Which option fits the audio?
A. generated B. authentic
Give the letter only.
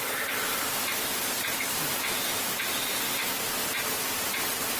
B